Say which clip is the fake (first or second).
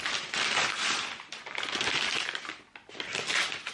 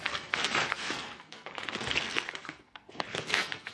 second